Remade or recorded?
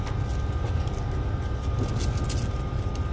recorded